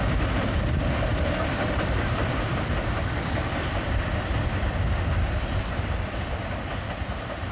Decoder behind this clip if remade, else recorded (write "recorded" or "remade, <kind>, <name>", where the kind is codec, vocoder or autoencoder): remade, vocoder, BigVGAN v2